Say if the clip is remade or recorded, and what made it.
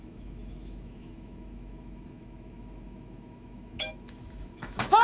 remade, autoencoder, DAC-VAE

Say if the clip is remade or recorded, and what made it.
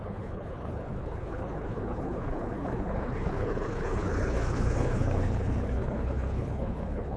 remade, codec, HILCodec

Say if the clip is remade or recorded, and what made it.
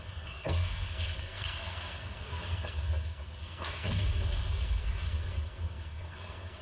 remade, codec, SNAC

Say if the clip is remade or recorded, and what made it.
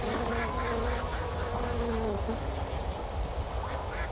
recorded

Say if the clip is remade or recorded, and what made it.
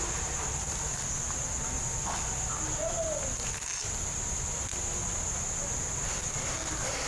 recorded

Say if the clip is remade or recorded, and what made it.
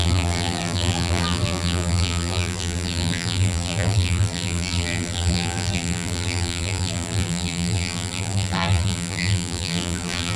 remade, vocoder, BigVGAN v2